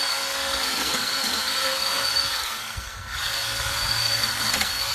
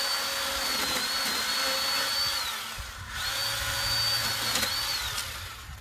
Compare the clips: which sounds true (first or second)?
second